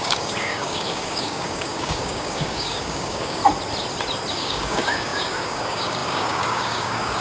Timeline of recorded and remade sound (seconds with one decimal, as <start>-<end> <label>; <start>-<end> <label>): 0.0-3.4 remade; 3.4-4.3 recorded; 4.3-7.2 remade